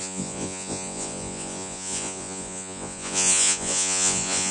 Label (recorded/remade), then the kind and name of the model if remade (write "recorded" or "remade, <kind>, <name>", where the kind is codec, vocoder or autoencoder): remade, vocoder, Vocos